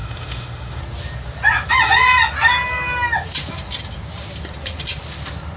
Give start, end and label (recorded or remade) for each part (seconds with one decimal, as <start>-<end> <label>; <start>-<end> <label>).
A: 0.0-0.8 remade; 0.8-5.6 recorded